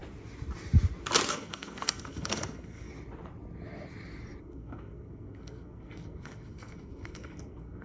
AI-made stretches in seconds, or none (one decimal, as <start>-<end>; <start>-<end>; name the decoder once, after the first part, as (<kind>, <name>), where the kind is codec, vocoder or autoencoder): 1.3-2.9 (codec, SNAC); 4.4-7.8